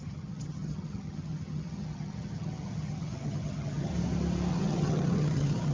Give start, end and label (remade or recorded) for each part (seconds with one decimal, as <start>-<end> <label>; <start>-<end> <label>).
0.0-3.9 remade; 3.9-4.5 recorded; 4.5-5.7 remade

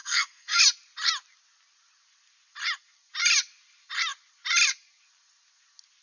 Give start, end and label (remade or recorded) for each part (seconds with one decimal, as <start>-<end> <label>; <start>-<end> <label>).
0.0-0.6 remade; 0.6-6.0 recorded

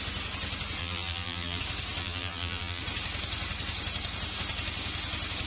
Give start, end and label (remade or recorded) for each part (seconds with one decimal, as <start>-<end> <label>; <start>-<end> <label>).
0.0-0.8 recorded; 0.8-1.6 remade; 1.6-2.0 recorded; 2.0-2.8 remade; 2.8-5.5 recorded

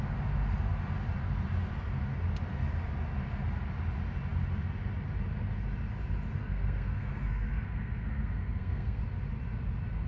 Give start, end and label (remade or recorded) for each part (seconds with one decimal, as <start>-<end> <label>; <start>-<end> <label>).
0.0-6.4 recorded; 6.4-9.0 remade; 9.0-10.1 recorded

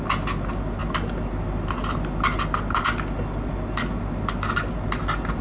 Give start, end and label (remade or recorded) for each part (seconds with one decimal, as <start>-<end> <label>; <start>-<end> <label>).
0.0-5.4 recorded